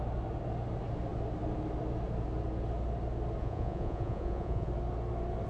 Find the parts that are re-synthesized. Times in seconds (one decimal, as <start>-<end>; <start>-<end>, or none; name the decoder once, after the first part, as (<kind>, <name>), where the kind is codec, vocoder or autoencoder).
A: 3.4-4.7 (vocoder, Vocos)